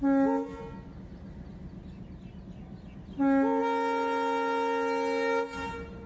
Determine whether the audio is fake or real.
real